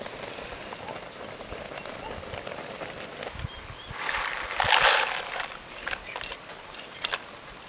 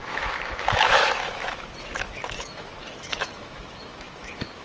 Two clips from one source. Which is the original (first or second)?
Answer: first